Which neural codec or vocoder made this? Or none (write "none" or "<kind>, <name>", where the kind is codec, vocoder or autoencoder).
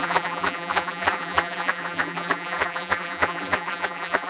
vocoder, BigVGAN v2